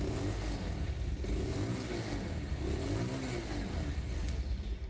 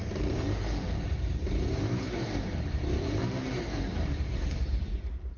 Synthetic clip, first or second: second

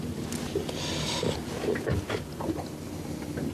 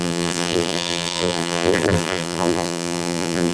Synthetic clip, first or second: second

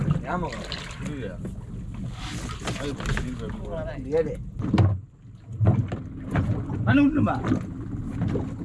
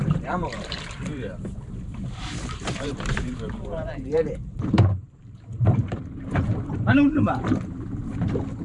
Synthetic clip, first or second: second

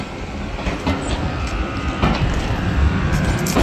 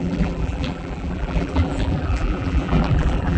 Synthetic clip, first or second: second